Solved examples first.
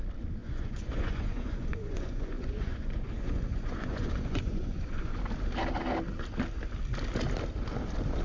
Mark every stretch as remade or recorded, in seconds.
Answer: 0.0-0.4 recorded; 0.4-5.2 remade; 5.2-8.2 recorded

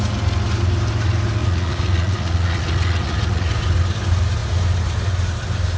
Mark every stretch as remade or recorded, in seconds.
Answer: 0.0-1.4 recorded; 1.4-3.6 remade; 3.6-5.8 recorded

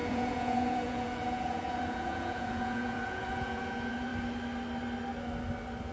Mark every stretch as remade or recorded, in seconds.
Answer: 0.0-4.1 remade; 4.1-5.9 recorded